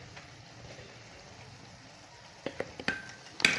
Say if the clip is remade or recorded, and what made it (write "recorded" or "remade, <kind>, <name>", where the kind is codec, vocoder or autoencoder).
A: recorded